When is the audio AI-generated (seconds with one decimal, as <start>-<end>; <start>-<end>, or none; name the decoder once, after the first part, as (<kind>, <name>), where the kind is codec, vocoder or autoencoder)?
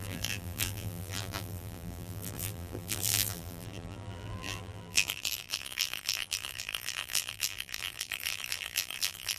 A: 0.0-9.4 (vocoder, BigVGAN v2)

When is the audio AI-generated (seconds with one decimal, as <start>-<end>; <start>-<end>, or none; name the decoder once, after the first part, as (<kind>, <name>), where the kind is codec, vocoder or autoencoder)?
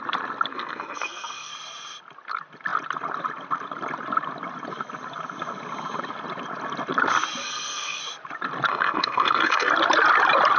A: 0.5-1.5 (codec, SNAC); 7.4-8.0; 8.7-9.7